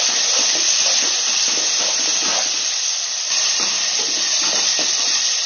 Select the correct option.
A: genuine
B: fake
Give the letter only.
A